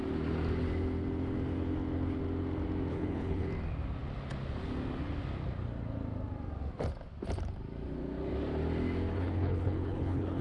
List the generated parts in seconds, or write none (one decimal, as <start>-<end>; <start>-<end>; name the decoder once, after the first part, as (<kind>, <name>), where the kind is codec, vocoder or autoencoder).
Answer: 2.9-3.5 (codec, HILCodec); 9.1-10.4